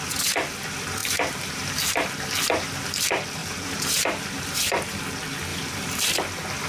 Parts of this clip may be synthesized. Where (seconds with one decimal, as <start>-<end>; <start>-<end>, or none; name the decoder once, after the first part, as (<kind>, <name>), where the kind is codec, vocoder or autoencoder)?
1.0-2.1 (vocoder, BigVGAN v2); 3.4-5.0; 5.5-6.0